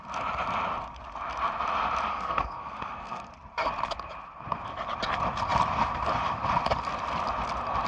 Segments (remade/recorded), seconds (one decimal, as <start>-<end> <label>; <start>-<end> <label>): 0.0-2.1 recorded; 2.1-3.3 remade; 3.3-7.9 recorded